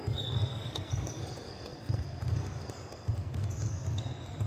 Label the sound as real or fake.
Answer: fake